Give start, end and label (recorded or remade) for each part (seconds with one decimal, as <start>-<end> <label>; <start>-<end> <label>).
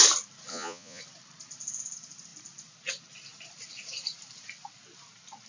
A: 0.0-0.5 recorded; 0.5-1.0 remade; 1.0-5.5 recorded